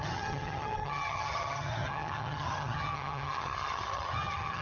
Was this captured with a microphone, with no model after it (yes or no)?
no